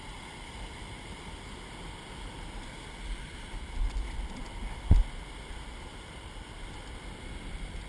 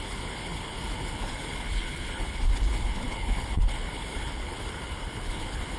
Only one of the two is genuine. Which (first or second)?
first